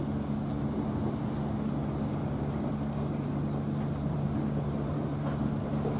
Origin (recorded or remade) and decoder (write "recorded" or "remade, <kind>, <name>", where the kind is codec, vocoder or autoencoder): recorded